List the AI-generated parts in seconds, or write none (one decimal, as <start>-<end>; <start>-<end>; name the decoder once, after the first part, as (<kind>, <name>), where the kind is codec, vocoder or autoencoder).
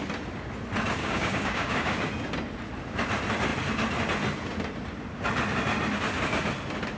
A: 1.0-2.1 (codec, DAC)